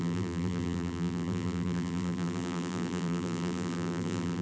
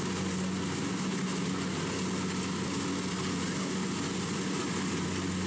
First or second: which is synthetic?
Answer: first